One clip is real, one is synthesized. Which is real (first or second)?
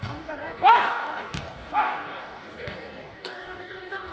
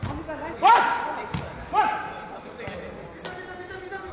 second